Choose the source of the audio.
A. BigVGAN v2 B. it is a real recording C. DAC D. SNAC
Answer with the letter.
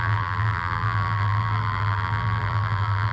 A